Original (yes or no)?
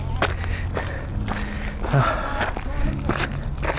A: yes